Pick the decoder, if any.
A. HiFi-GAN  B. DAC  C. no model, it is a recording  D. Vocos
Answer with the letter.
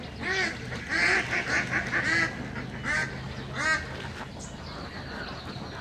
C